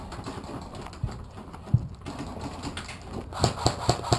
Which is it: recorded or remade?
recorded